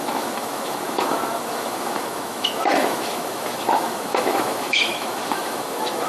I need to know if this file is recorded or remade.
remade